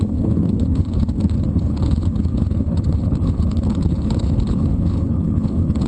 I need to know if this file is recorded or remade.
remade